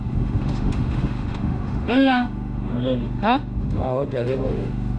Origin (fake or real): fake